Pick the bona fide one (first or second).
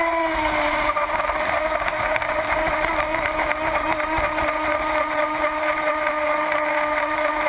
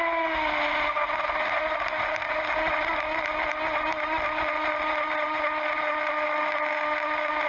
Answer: second